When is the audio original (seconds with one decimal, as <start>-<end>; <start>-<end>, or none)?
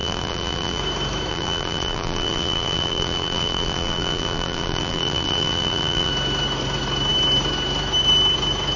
0.8-1.3; 6.1-8.8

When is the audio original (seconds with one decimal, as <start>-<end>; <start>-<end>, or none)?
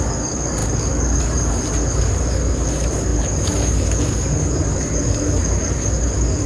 none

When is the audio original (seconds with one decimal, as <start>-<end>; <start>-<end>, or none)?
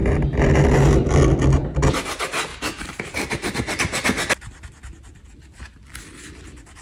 0.0-2.5; 3.0-6.8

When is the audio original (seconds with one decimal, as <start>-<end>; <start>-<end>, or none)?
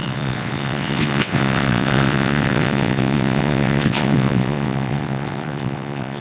none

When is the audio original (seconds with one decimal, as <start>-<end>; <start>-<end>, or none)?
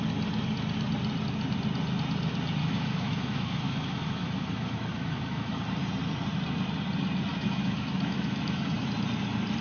0.0-2.6; 5.6-7.3; 8.9-9.6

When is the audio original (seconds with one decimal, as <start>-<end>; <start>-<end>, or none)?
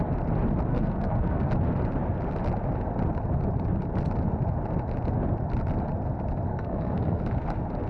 0.0-0.7; 1.5-6.5; 7.2-7.9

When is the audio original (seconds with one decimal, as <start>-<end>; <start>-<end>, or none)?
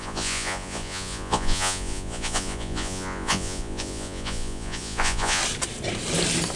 5.4-6.6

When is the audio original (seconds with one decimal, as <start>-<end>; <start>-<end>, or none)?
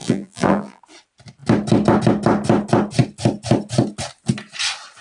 0.8-5.0